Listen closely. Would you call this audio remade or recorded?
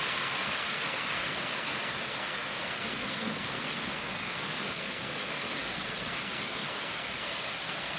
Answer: remade